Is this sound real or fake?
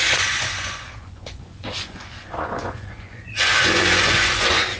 fake